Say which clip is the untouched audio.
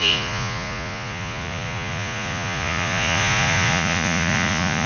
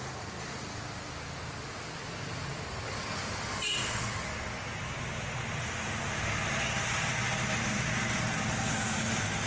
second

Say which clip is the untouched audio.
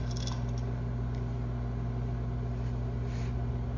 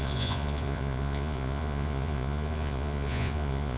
first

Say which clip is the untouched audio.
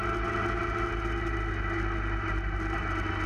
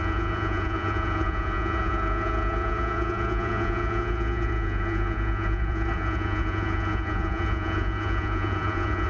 first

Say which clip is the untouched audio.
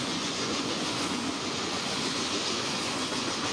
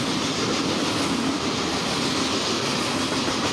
second